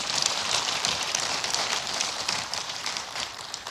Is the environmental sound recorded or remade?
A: remade